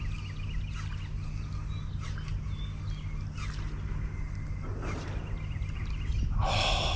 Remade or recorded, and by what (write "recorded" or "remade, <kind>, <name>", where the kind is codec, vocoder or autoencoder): recorded